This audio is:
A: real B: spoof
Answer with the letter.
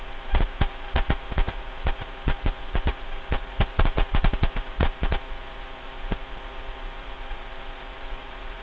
B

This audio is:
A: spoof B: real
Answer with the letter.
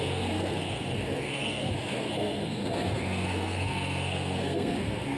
A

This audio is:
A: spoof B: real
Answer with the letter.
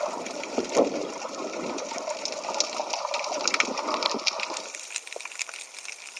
B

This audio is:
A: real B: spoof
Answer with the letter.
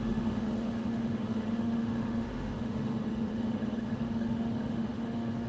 B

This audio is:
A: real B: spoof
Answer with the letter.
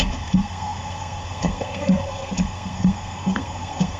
B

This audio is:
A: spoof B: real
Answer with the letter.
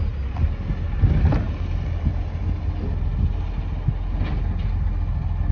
B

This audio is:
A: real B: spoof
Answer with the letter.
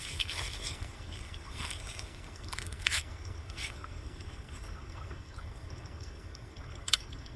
B